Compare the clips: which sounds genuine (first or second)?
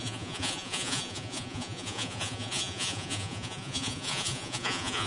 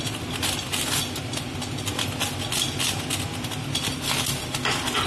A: second